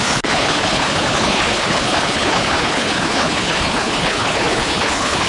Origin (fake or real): fake